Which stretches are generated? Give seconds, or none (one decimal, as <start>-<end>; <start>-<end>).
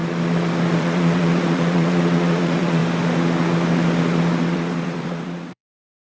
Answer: 0.8-2.8; 4.5-6.1